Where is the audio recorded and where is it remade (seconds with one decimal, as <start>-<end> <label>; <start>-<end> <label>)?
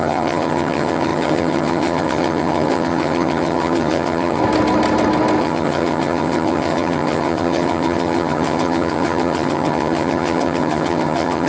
0.0-4.4 remade; 4.4-5.4 recorded; 5.4-11.5 remade